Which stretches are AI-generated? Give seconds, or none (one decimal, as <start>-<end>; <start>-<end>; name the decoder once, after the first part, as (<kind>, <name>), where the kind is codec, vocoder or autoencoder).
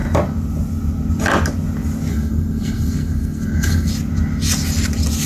2.1-3.9 (codec, SNAC)